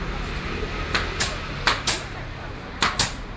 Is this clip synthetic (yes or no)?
no